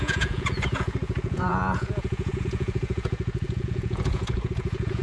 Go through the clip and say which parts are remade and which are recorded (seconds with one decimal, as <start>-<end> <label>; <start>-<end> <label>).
0.0-5.0 remade